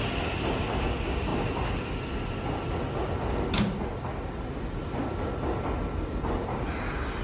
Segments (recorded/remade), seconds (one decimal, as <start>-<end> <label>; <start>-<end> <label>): 0.0-7.2 recorded